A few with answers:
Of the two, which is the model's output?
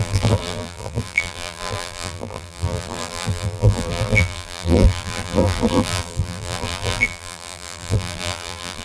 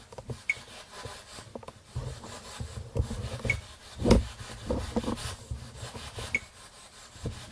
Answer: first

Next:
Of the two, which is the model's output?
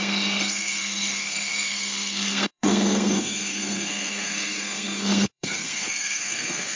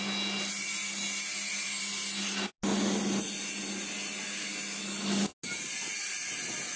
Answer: first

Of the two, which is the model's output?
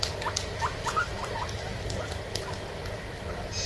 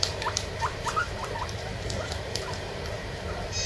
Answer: second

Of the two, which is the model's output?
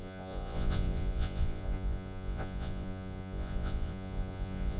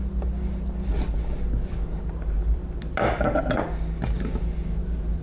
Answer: first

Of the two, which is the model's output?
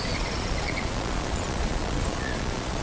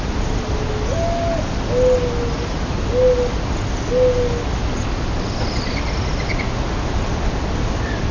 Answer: first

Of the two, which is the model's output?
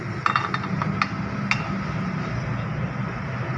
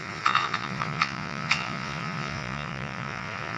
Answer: second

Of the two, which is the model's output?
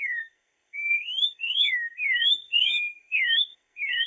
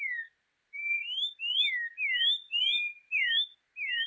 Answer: first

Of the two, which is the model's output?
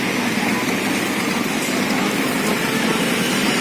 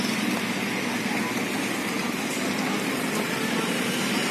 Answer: first